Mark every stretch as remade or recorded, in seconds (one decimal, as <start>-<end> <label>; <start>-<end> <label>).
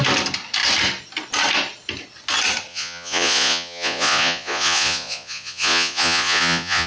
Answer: 0.0-2.7 recorded; 2.7-6.9 remade